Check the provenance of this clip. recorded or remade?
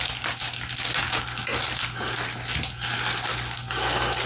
recorded